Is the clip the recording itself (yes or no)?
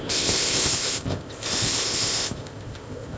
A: no